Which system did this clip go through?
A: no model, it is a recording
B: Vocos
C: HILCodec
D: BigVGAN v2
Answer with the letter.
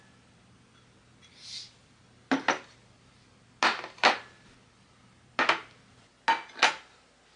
A